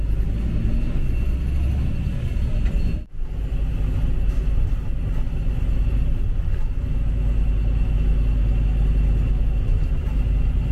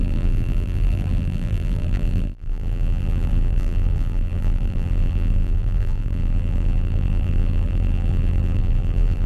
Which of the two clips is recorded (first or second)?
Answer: first